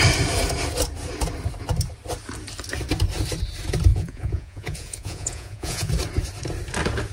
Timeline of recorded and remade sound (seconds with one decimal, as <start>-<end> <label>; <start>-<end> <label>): 0.0-3.9 recorded; 3.9-5.9 remade; 5.9-7.1 recorded